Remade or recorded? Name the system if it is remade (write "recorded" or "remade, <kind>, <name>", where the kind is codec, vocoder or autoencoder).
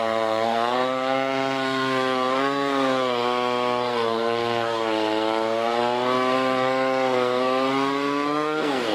remade, codec, SNAC